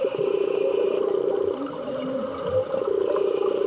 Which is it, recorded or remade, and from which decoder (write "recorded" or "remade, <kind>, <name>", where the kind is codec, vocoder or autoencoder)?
recorded